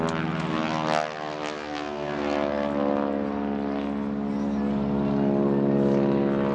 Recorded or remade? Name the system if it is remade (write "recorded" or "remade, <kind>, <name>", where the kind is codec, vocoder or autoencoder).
recorded